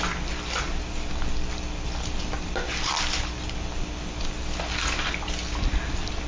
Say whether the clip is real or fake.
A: real